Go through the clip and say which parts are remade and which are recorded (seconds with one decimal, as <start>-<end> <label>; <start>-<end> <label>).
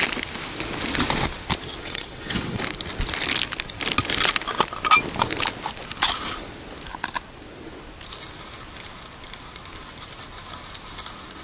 0.0-1.8 recorded; 1.8-2.6 remade; 2.6-11.4 recorded